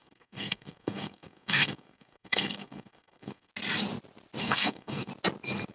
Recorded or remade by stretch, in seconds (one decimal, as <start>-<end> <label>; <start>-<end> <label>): 0.0-3.5 remade; 3.5-4.4 recorded; 4.4-5.1 remade; 5.1-5.7 recorded